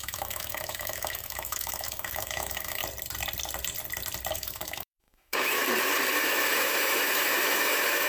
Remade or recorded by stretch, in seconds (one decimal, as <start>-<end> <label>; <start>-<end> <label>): 0.0-2.8 remade; 2.8-4.3 recorded; 4.3-5.6 remade; 5.6-6.2 recorded; 6.2-8.1 remade